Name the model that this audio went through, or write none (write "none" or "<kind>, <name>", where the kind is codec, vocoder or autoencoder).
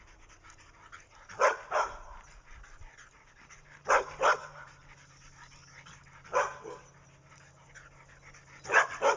none